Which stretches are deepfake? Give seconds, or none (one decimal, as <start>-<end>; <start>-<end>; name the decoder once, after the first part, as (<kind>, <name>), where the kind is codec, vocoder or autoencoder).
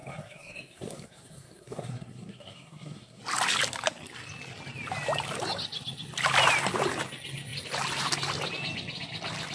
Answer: 0.0-3.2 (codec, SNAC)